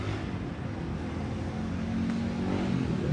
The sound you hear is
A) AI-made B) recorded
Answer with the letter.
B